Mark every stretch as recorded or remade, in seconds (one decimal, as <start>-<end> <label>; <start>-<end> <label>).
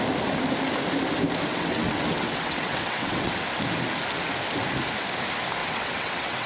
0.0-1.5 recorded; 1.5-3.4 remade; 3.4-5.6 recorded; 5.6-6.5 remade